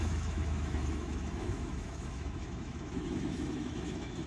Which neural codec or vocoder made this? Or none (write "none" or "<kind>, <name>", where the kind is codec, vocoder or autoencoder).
autoencoder, DAC-VAE